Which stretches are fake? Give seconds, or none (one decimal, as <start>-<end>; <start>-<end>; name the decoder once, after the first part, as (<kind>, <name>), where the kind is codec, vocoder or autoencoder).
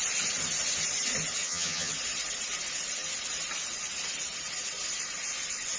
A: 1.4-1.9 (vocoder, HiFi-GAN)